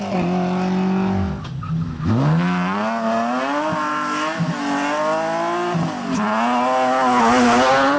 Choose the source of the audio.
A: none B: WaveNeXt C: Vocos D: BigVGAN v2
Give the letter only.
A